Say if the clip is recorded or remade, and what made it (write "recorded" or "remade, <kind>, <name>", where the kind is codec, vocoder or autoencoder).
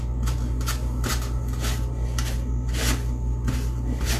recorded